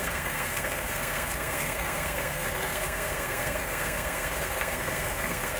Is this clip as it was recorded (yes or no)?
no